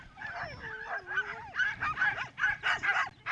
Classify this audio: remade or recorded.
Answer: recorded